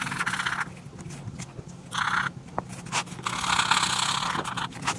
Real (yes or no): yes